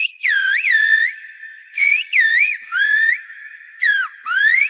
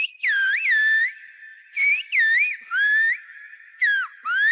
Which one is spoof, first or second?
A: first